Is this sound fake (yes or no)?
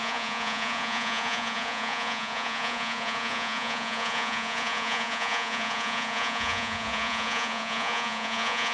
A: yes